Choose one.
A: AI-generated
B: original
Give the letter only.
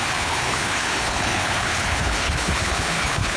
A